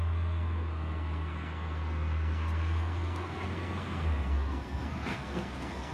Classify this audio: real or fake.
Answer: fake